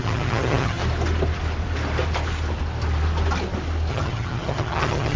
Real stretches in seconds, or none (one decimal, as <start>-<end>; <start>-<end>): 0.8-3.9